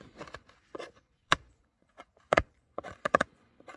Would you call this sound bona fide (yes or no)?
no